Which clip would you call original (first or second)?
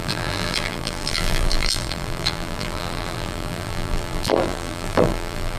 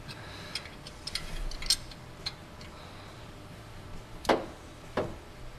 second